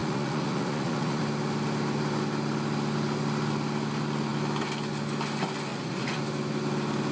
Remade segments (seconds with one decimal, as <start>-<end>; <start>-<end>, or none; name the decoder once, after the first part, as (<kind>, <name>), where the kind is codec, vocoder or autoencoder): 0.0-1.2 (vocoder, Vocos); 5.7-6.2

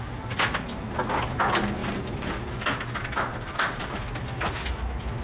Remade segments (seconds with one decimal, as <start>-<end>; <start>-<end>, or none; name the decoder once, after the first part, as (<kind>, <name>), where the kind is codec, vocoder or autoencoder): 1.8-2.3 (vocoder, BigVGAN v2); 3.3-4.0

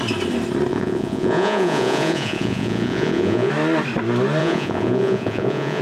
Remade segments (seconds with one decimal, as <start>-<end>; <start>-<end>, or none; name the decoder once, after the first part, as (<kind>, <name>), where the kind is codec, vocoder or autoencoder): 0.7-3.5 (vocoder, Vocos); 4.4-5.8

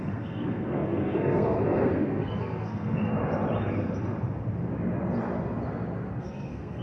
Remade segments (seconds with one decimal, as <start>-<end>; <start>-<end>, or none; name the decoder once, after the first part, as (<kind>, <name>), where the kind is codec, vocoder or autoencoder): 0.0-3.1 (codec, SNAC); 6.2-6.8